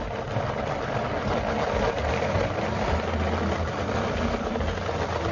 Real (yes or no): yes